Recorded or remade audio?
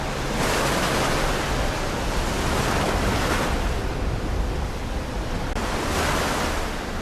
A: recorded